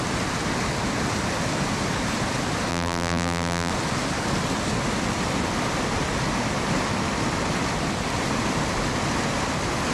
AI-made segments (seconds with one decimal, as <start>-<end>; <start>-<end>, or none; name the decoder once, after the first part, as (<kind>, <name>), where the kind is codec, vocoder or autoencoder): 2.7-3.7 (vocoder, BigVGAN v2)

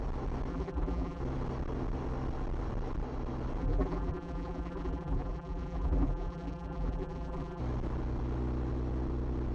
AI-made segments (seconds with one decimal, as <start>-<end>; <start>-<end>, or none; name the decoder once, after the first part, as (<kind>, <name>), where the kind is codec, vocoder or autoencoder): 0.5-1.2 (vocoder, BigVGAN v2); 3.6-7.6

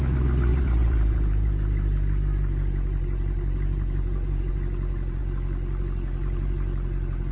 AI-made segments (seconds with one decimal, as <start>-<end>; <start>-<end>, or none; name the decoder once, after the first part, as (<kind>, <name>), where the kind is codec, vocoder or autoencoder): 0.5-4.5 (vocoder, BigVGAN v2)

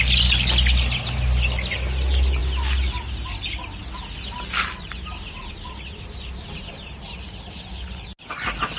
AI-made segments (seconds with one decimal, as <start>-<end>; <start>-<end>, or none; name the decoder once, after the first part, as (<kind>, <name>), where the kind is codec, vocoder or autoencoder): none

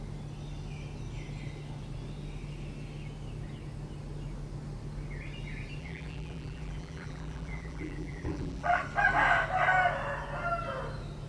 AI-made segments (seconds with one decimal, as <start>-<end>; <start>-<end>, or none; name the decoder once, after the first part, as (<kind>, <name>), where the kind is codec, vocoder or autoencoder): 5.8-8.8 (vocoder, BigVGAN v2)

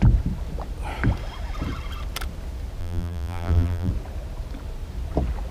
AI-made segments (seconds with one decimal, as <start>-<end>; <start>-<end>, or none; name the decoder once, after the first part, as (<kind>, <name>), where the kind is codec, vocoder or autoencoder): 2.8-3.9 (vocoder, BigVGAN v2)